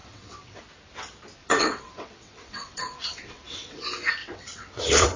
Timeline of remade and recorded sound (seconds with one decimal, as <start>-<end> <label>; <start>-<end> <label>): 0.0-0.6 remade; 0.6-1.4 recorded; 1.4-3.8 remade; 3.8-4.2 recorded; 4.2-5.2 remade